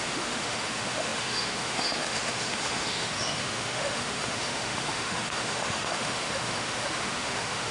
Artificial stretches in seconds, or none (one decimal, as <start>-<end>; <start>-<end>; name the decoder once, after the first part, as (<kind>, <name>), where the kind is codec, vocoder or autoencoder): 0.0-7.7 (autoencoder, DAC-VAE)